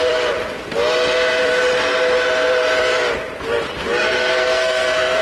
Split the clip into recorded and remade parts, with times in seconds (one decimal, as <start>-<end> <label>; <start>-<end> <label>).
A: 0.0-4.0 recorded; 4.0-5.2 remade